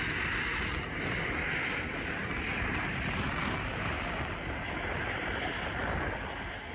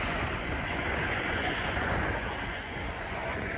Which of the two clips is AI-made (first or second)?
second